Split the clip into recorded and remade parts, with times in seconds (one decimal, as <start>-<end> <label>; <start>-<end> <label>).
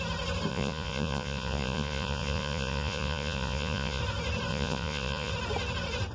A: 0.0-0.5 recorded; 0.5-4.0 remade; 4.0-4.5 recorded; 4.5-5.3 remade; 5.3-6.1 recorded